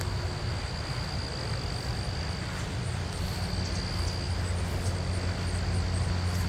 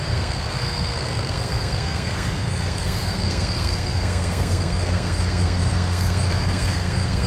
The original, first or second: first